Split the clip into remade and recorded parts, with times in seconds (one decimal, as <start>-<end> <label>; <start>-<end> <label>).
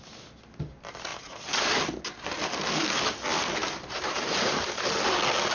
0.0-1.1 recorded; 1.1-1.8 remade; 1.8-3.6 recorded; 3.6-4.6 remade; 4.6-5.5 recorded